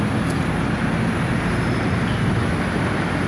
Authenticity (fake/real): real